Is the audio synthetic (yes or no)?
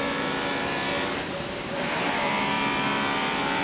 yes